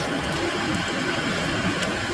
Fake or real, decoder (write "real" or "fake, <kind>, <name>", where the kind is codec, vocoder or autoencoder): real